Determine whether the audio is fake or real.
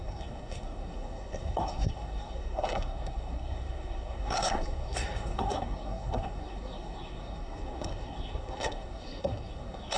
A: fake